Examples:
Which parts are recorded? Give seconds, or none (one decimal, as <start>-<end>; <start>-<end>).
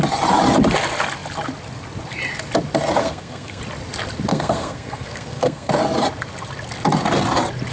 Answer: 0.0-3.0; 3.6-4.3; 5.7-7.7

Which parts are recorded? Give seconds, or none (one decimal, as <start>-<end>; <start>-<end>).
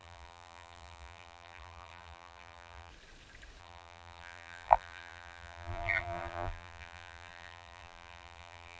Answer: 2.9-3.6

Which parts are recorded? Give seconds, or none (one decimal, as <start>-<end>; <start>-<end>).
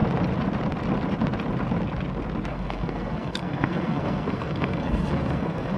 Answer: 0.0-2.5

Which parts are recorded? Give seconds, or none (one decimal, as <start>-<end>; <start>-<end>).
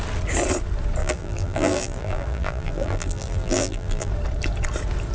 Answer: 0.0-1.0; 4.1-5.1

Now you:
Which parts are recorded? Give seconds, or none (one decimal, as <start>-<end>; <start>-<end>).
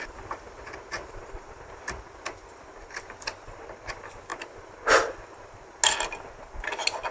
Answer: 4.3-7.1